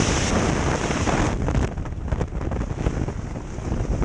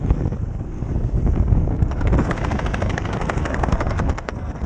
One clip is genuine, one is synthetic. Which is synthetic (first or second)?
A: second